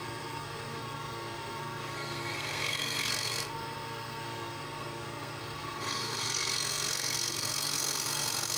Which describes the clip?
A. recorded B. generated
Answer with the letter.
B